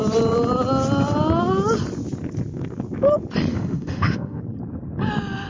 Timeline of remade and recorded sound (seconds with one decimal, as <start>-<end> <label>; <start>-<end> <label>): 0.0-3.5 recorded; 3.5-4.4 remade; 4.4-5.5 recorded